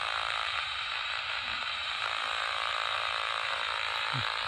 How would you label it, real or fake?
fake